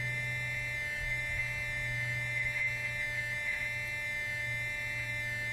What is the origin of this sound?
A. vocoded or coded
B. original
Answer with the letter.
B